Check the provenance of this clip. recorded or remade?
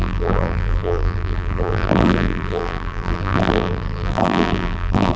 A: remade